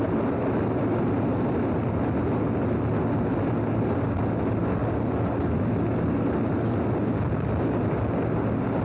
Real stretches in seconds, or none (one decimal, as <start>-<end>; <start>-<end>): 0.0-8.8